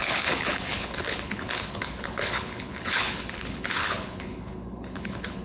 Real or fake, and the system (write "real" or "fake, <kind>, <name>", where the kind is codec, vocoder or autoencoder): fake, codec, HILCodec